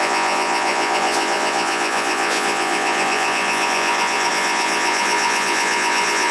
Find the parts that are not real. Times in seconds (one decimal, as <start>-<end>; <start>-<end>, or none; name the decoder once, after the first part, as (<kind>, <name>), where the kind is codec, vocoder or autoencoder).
0.0-6.3 (vocoder, Vocos)